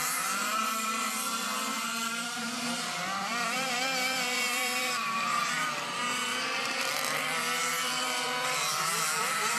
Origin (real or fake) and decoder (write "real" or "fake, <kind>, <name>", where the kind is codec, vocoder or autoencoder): fake, vocoder, BigVGAN v2